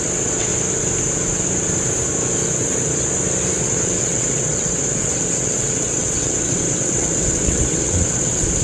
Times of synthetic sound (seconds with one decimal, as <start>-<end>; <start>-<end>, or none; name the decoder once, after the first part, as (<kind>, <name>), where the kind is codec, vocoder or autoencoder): 0.0-0.5 (vocoder, WaveNeXt); 3.6-8.6